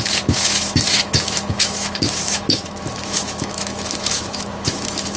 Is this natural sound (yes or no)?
no